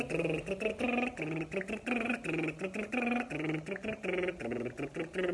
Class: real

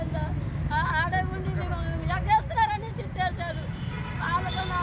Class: real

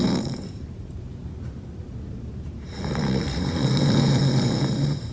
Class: fake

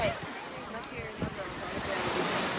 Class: real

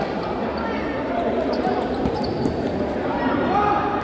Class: fake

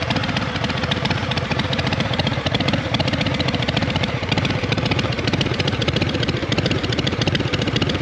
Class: fake